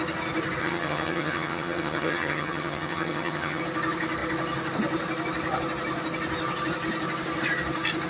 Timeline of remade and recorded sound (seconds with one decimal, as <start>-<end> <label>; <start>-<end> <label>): 0.0-0.6 recorded; 0.6-3.6 remade; 3.6-8.1 recorded